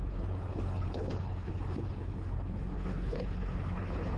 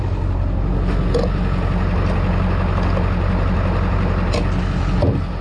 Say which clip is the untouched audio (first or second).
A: second